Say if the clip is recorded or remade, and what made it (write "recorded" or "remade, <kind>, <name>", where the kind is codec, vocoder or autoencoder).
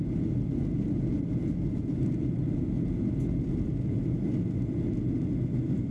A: recorded